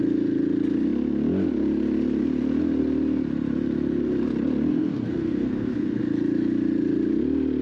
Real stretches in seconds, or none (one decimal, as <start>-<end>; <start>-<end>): 0.0-4.7; 6.0-7.6